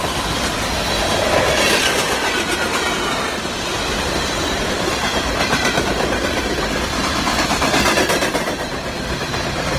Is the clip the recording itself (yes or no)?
yes